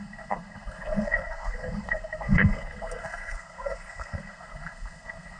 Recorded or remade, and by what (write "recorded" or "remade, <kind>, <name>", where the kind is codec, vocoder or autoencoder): remade, codec, SNAC